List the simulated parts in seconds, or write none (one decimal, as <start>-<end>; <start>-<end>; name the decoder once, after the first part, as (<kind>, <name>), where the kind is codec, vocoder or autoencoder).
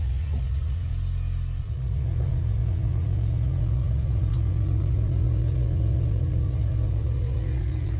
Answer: 0.0-0.9 (vocoder, Vocos); 1.6-8.0